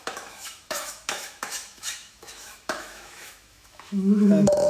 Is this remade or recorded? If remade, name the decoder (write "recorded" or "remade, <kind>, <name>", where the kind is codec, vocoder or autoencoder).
remade, autoencoder, DAC-VAE